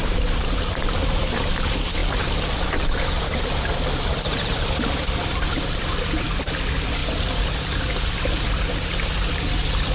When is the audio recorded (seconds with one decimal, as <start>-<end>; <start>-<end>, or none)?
7.0-9.5